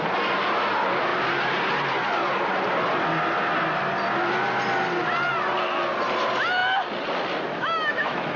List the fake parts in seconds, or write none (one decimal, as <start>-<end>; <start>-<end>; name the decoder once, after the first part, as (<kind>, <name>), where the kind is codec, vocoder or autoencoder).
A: 7.5-8.4 (autoencoder, DAC-VAE)